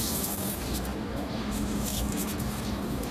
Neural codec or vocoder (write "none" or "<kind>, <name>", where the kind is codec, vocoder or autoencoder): codec, DAC